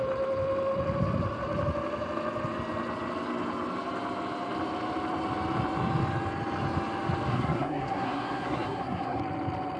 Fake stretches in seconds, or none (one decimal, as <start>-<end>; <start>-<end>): 7.3-9.2